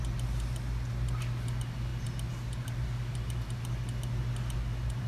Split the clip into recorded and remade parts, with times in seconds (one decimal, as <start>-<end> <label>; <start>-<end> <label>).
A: 0.0-5.1 recorded